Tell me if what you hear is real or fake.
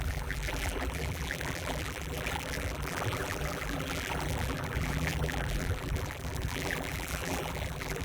fake